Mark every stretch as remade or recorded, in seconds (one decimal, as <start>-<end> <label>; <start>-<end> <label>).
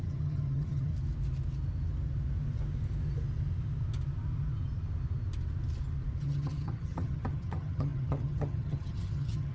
0.0-0.9 remade; 0.9-6.2 recorded; 6.2-9.5 remade